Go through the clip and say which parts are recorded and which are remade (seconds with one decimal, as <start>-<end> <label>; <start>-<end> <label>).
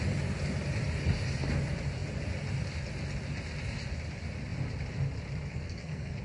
0.0-5.5 recorded; 5.5-6.2 remade